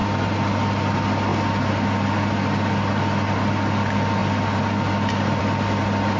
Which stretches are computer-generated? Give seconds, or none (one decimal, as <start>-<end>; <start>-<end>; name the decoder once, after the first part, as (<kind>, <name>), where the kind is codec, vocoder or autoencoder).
none